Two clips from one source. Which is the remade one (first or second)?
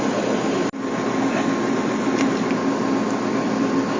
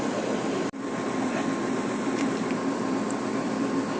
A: second